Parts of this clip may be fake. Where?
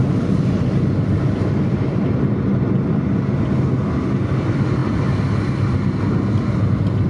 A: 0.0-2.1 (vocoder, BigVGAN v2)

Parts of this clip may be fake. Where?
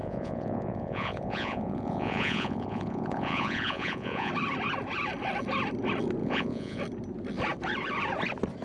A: 0.0-4.3 (vocoder, Vocos); 6.2-6.8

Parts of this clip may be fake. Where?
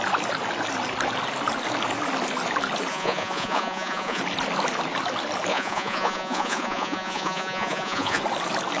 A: 2.9-4.2 (vocoder, Vocos); 5.5-8.2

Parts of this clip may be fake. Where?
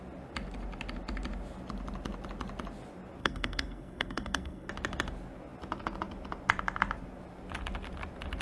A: 3.2-4.7 (codec, SNAC)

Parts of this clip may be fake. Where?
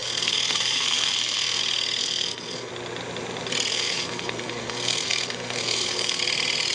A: 0.0-1.6 (codec, SNAC); 2.0-2.7; 3.7-6.2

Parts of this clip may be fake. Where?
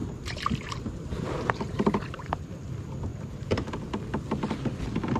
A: 0.0-2.4 (vocoder, BigVGAN v2); 3.1-3.7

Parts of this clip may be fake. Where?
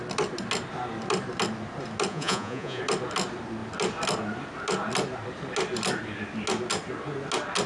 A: 2.1-2.8 (vocoder, Vocos)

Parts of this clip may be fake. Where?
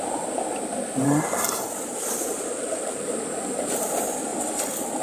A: 1.0-3.1 (vocoder, BigVGAN v2)